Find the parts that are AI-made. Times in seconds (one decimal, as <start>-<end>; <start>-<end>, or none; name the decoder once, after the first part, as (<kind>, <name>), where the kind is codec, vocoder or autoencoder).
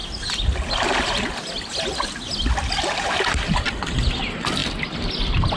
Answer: 4.6-5.1 (vocoder, BigVGAN v2)